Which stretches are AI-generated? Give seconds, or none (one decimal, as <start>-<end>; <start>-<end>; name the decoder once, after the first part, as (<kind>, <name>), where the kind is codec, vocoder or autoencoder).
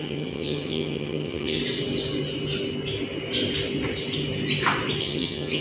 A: 0.0-1.6 (vocoder, HiFi-GAN); 5.0-5.6